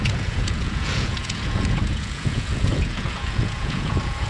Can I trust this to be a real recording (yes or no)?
no